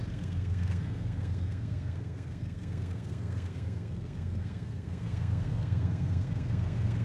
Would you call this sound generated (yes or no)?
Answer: yes